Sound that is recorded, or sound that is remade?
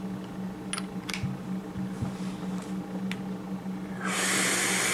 recorded